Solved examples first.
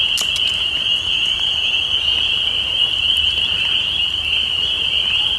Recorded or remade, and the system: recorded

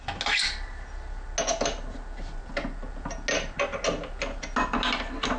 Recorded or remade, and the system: recorded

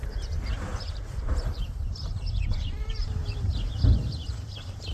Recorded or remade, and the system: remade, vocoder, BigVGAN v2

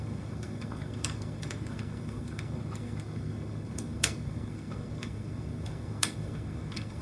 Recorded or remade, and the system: remade, codec, SNAC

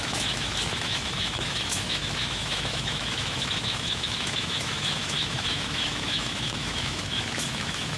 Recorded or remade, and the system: remade, autoencoder, DAC-VAE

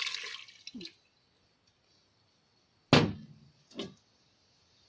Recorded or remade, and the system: recorded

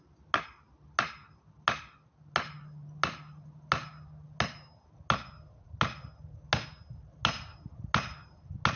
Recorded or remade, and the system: recorded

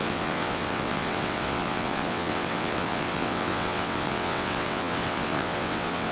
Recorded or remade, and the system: remade, vocoder, WaveNeXt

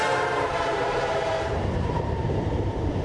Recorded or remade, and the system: remade, vocoder, BigVGAN v2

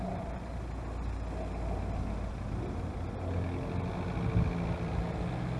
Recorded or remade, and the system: recorded